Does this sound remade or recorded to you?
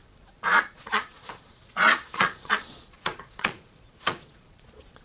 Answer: remade